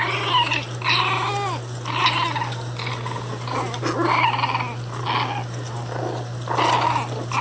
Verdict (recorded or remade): recorded